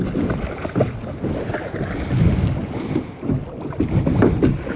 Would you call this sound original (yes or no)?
yes